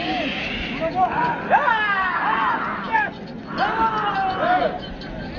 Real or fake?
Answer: real